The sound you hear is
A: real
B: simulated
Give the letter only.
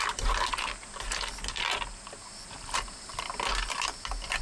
A